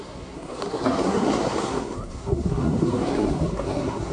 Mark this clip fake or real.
fake